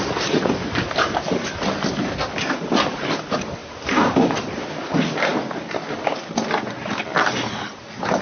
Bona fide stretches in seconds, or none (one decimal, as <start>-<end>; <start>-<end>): 0.0-8.2